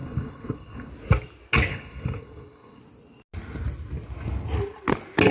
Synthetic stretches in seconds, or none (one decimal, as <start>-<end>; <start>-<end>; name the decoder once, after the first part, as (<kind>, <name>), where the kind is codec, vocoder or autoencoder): 0.0-0.9 (codec, HILCodec); 1.7-2.8